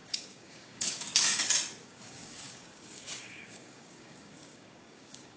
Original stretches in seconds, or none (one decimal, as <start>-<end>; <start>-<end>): 1.1-1.8